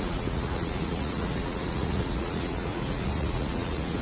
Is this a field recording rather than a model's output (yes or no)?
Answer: no